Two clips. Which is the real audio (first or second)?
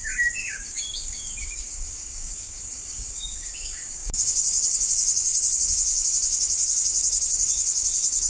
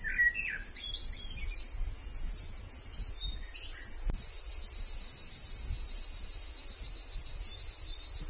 second